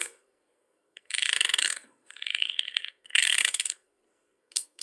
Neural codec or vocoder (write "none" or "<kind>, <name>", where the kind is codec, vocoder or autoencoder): codec, SNAC